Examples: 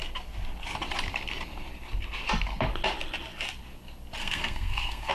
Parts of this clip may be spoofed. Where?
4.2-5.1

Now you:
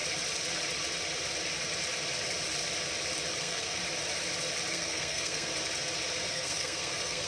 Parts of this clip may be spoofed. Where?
3.4-3.8; 4.7-5.5; 6.3-7.3

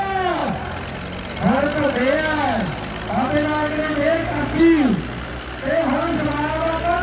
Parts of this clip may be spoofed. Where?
none

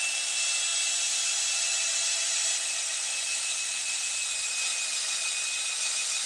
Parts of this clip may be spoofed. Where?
none